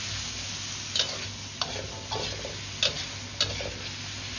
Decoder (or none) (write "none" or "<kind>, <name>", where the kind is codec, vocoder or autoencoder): none